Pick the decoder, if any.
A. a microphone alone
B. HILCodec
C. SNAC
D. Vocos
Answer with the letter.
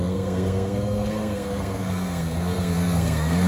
C